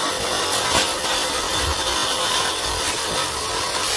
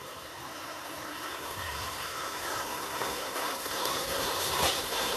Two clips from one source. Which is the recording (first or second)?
first